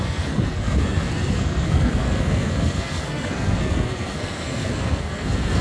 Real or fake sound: fake